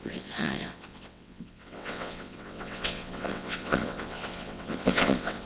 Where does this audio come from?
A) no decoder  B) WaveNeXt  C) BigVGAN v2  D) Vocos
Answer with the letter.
B